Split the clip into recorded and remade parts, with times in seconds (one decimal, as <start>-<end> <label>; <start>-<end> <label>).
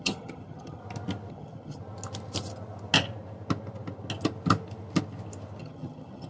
0.0-0.8 remade; 0.8-1.3 recorded; 1.3-1.8 remade; 1.8-5.6 recorded; 5.6-6.3 remade